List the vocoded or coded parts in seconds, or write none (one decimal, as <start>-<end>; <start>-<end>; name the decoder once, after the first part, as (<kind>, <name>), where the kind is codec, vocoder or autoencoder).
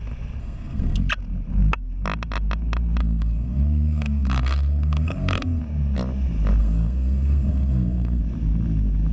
0.4-1.1 (codec, SNAC); 3.0-5.6; 6.6-8.2